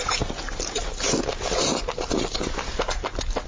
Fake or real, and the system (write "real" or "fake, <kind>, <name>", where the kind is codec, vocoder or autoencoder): real